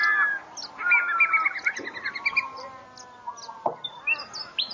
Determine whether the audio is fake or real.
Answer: real